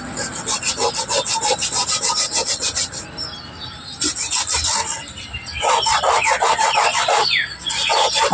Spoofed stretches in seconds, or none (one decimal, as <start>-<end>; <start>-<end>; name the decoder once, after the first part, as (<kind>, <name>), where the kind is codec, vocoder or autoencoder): none